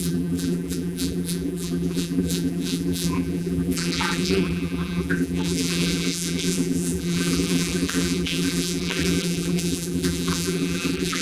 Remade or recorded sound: remade